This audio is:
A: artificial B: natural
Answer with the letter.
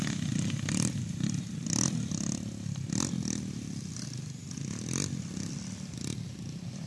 B